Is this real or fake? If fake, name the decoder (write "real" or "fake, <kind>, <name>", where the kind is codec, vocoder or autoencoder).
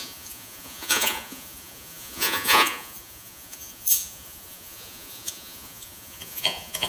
fake, vocoder, Vocos